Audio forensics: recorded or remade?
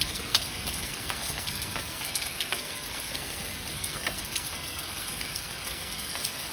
remade